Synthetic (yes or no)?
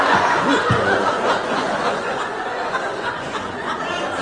yes